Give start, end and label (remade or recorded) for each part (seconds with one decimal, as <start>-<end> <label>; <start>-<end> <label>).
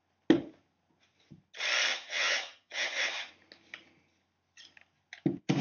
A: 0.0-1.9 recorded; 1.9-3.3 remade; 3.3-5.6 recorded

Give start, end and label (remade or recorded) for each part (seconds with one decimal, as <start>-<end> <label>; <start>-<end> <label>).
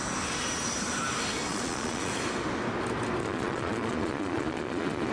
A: 0.0-1.5 recorded; 1.5-2.1 remade; 2.1-3.2 recorded; 3.2-5.1 remade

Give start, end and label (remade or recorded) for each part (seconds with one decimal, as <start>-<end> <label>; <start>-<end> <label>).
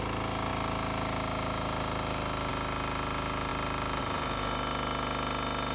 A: 0.0-5.7 recorded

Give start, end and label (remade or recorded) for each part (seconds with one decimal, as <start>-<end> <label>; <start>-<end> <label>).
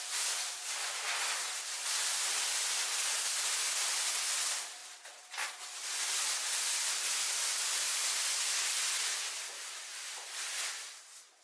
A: 0.0-11.4 recorded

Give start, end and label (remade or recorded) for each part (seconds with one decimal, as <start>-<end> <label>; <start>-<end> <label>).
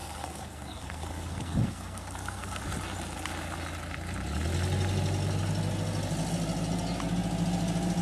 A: 0.0-2.6 remade; 2.6-8.0 recorded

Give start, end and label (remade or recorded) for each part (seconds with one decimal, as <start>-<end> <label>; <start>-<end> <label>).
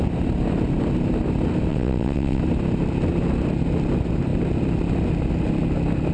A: 0.0-1.7 recorded; 1.7-2.4 remade; 2.4-6.1 recorded